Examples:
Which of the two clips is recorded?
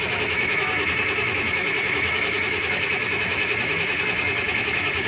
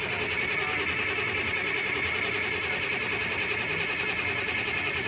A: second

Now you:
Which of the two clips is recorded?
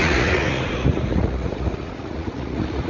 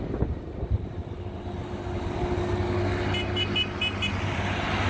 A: second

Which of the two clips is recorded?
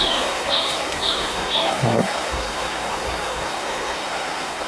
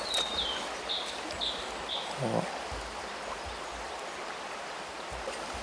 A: second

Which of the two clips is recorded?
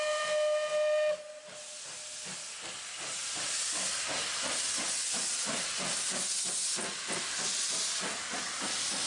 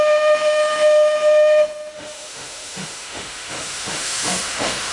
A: first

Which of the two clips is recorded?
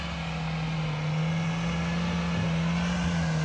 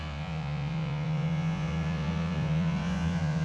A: first